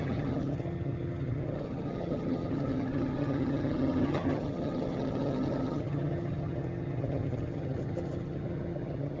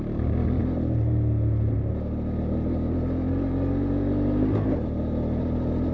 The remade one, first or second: first